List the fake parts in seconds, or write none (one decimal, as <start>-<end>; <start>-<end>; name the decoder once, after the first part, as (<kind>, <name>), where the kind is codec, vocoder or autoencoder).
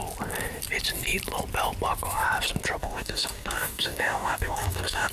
2.8-5.1 (codec, DAC)